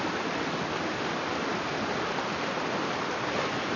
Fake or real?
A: real